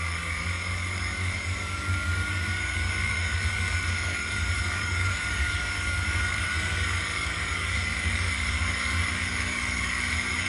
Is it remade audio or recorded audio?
remade